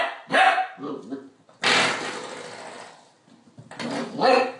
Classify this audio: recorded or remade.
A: recorded